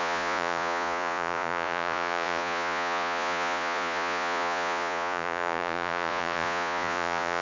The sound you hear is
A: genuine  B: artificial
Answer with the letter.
B